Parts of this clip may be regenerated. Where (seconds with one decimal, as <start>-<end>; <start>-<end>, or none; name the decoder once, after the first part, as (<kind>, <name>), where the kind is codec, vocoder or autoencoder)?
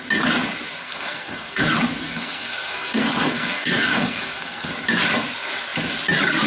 0.8-1.6 (codec, SNAC); 2.0-4.7